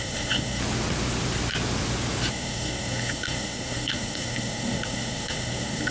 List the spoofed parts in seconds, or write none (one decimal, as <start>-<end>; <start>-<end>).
0.0-0.6; 2.3-5.9